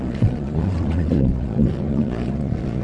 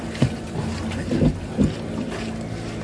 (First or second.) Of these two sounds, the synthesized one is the first